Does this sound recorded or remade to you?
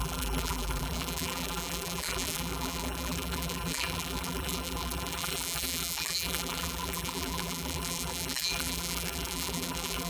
remade